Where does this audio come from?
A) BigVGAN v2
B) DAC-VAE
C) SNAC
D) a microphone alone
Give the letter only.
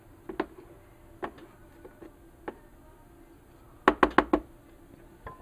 D